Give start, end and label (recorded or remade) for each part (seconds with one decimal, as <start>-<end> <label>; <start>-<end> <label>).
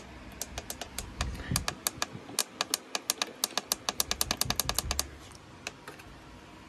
0.0-6.7 recorded